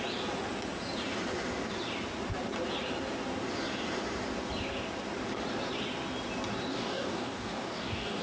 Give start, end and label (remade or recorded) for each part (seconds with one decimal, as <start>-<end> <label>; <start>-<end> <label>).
0.0-6.7 recorded; 6.7-8.2 remade